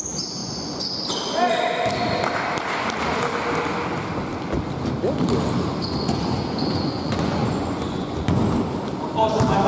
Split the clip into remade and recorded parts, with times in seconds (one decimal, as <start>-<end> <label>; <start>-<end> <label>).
0.0-0.4 recorded; 0.4-1.0 remade; 1.0-5.7 recorded; 5.7-8.4 remade; 8.4-9.7 recorded